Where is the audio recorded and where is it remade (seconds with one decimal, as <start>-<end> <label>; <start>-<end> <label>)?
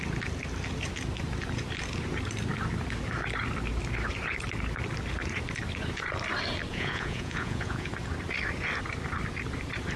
0.0-6.7 recorded; 6.7-7.9 remade; 7.9-10.0 recorded